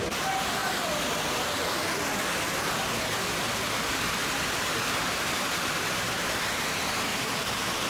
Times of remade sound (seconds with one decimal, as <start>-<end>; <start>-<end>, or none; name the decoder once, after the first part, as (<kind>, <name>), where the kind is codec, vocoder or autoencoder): 7.1-7.9 (vocoder, BigVGAN v2)

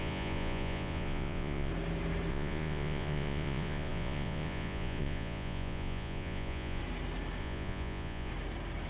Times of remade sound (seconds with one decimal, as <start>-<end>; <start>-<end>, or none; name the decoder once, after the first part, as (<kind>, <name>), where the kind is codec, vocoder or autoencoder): 0.0-1.7 (vocoder, Vocos); 2.3-6.8; 7.4-8.3

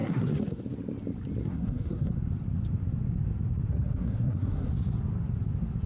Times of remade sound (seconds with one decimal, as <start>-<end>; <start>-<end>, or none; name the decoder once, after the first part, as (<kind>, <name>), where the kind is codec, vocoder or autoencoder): 0.0-0.6 (codec, SNAC); 1.4-2.1; 3.7-4.7

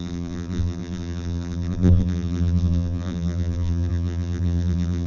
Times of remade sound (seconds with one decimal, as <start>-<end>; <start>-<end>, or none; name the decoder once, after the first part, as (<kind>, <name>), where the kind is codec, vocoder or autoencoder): 0.0-5.1 (vocoder, BigVGAN v2)

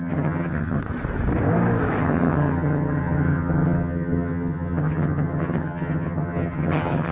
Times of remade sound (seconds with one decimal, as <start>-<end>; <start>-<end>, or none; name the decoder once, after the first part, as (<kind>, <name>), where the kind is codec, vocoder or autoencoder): 0.0-0.8 (vocoder, HiFi-GAN); 2.0-7.1

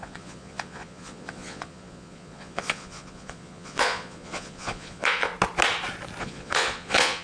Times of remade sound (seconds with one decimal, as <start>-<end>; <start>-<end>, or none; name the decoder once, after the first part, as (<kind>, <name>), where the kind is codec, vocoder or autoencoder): 0.0-5.3 (vocoder, Vocos); 6.2-7.2